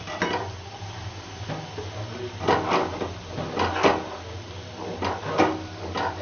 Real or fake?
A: real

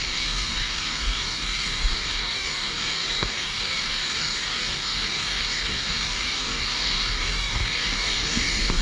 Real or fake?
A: fake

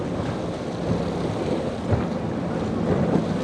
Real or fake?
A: real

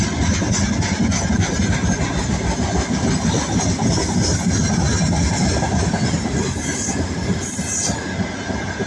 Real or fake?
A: real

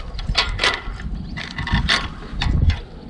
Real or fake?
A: real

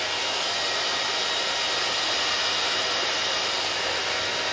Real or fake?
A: real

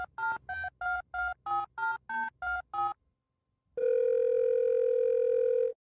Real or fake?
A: real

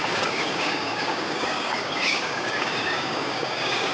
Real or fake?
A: fake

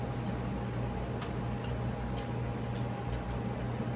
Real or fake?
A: real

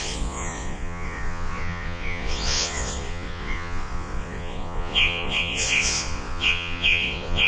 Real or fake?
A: fake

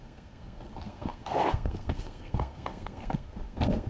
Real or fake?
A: fake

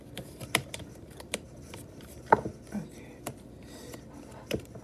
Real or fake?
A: fake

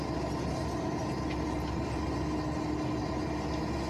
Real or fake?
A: real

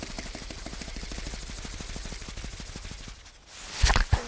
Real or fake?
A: real